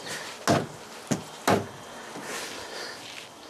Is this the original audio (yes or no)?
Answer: yes